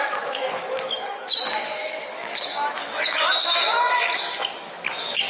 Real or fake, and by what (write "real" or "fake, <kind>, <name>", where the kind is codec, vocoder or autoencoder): fake, autoencoder, DAC-VAE